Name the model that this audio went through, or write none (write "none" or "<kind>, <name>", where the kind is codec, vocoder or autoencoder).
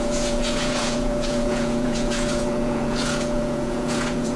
vocoder, Vocos